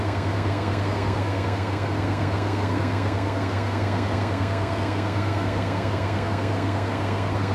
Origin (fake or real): fake